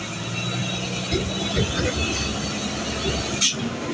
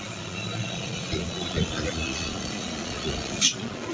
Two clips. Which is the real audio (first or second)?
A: first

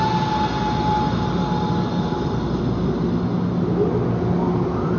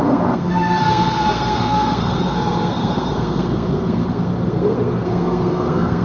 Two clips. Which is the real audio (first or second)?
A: first